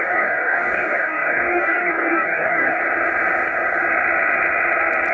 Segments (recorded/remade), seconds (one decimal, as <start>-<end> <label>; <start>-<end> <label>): 0.0-2.8 remade; 2.8-5.1 recorded